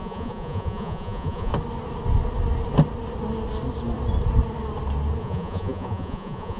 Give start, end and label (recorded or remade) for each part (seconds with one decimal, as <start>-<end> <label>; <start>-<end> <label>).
0.0-1.5 remade; 1.5-5.2 recorded; 5.2-6.6 remade